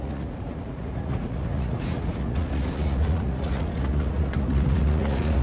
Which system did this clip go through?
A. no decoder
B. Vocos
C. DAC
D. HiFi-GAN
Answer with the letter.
B